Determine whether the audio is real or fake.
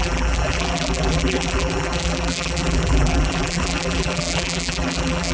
fake